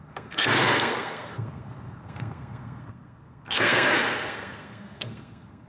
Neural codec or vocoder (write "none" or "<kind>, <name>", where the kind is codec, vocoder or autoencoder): codec, SNAC